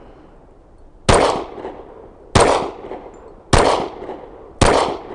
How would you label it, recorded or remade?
recorded